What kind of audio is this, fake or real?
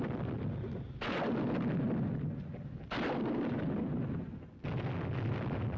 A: real